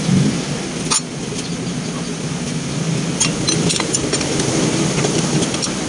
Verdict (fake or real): real